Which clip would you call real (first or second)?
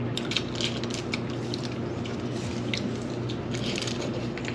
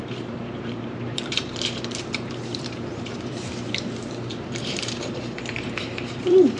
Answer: first